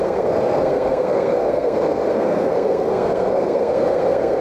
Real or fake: fake